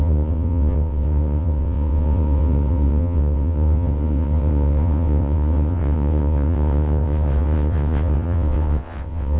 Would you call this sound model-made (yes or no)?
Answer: yes